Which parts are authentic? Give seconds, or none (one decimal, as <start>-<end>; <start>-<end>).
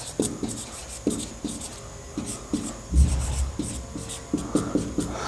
0.0-5.3